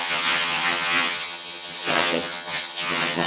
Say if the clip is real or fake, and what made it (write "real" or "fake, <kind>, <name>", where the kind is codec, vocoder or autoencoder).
fake, vocoder, HiFi-GAN